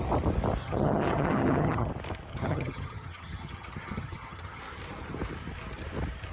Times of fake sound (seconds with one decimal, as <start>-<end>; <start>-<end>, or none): 0.6-1.9; 2.3-4.6